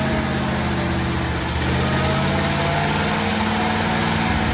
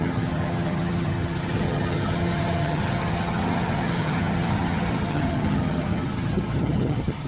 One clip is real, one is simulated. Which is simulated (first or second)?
second